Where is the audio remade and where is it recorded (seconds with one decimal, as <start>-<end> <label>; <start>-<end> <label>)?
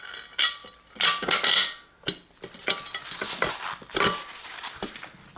0.0-5.4 recorded